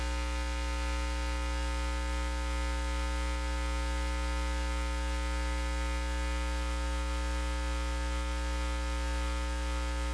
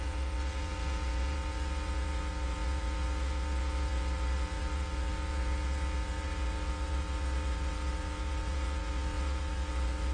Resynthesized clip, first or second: second